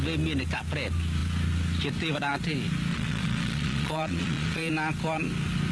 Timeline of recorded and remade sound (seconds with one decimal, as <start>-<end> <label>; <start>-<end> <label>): 0.0-2.9 recorded; 2.9-4.7 remade; 4.7-5.7 recorded